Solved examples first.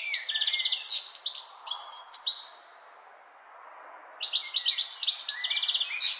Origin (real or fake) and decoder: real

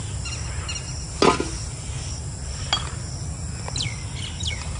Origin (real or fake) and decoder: real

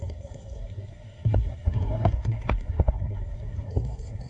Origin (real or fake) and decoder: fake, codec, SNAC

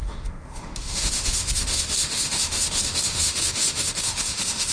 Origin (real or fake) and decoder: fake, autoencoder, DAC-VAE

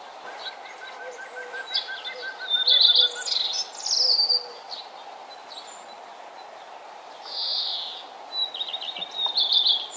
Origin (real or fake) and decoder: real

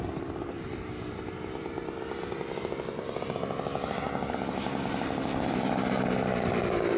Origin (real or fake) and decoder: real